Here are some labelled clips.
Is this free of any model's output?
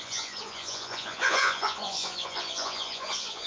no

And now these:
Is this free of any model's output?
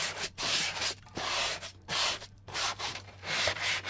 no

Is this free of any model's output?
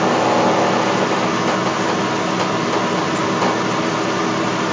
yes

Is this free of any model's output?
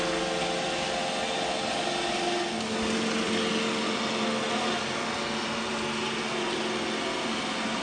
yes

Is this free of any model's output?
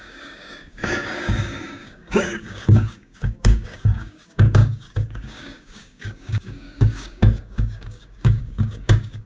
no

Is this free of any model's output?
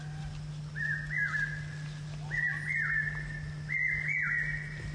yes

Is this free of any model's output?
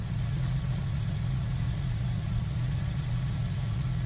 no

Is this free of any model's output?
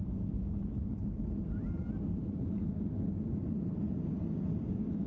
yes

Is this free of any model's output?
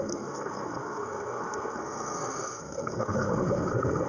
no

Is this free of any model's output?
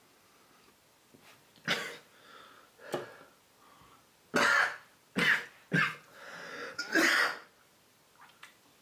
yes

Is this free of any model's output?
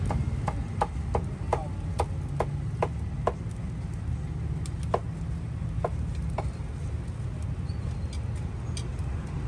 yes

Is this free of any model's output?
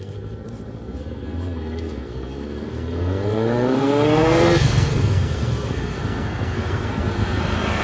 no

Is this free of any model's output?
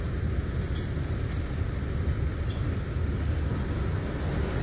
yes